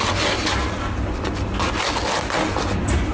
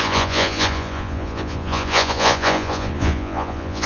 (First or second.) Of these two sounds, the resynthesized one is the second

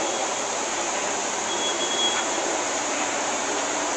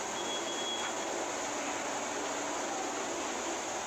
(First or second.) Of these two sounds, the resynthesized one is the first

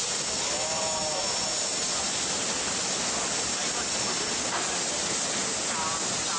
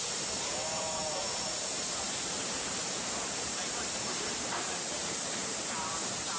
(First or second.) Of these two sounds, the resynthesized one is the second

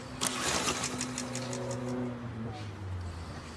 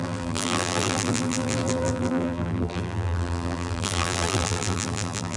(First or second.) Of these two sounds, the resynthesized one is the second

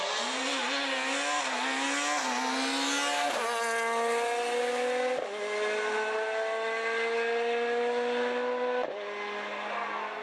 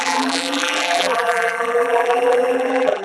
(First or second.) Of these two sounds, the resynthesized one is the second